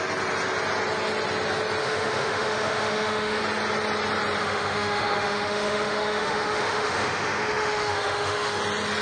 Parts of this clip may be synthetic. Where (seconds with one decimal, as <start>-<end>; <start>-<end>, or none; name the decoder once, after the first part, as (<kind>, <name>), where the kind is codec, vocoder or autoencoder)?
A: 1.8-3.4 (autoencoder, DAC-VAE); 4.4-8.6